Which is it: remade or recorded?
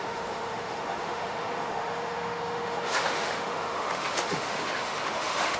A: remade